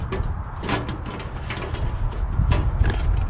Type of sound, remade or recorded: recorded